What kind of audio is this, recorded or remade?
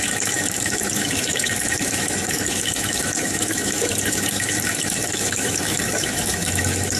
remade